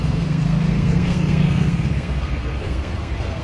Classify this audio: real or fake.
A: fake